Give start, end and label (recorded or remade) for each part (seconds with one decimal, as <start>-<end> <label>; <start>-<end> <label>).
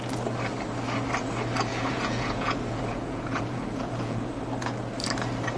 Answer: 0.0-1.7 recorded; 1.7-4.3 remade; 4.3-5.6 recorded